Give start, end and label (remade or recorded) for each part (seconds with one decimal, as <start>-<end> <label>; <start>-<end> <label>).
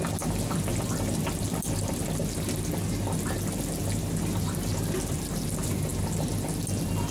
0.0-7.1 recorded